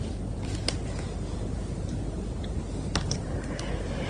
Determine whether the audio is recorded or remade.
recorded